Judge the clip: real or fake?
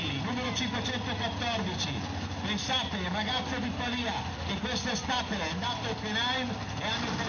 real